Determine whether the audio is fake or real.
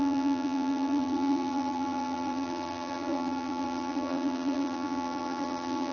fake